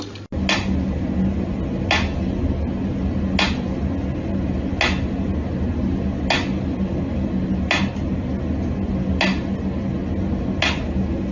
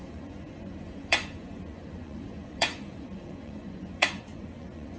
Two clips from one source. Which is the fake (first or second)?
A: second